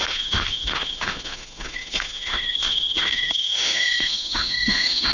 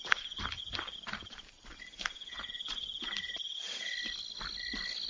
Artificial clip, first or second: first